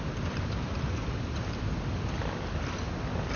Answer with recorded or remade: recorded